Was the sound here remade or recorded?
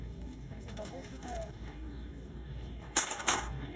remade